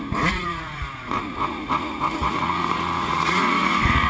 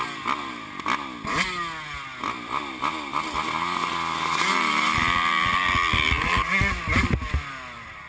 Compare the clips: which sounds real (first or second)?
second